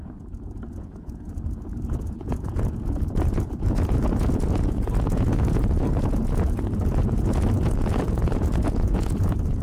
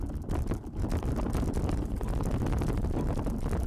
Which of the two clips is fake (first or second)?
first